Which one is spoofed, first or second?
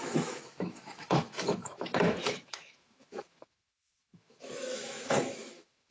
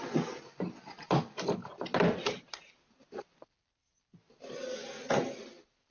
first